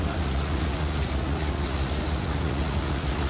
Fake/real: fake